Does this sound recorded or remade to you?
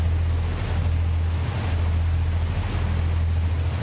recorded